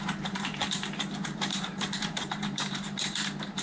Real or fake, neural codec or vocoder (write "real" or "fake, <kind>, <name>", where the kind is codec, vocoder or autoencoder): fake, vocoder, BigVGAN v2